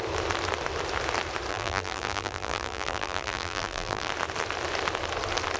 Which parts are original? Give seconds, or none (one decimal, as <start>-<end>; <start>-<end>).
0.0-1.5; 4.1-5.6